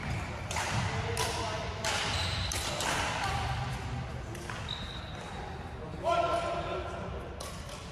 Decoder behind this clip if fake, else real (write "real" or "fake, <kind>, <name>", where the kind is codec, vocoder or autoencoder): real